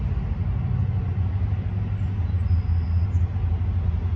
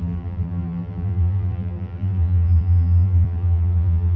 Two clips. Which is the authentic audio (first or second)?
first